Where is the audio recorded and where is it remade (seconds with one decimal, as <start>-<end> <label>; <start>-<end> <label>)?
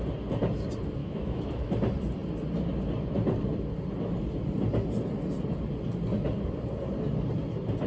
0.0-1.0 recorded; 1.0-1.7 remade; 1.7-7.9 recorded